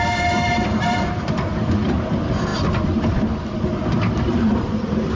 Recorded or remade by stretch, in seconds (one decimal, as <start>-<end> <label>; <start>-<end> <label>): 0.0-5.2 recorded